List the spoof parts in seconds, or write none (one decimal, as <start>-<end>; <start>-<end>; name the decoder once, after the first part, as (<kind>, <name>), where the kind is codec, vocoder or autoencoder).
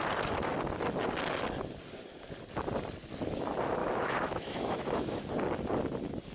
3.8-5.3 (autoencoder, DAC-VAE)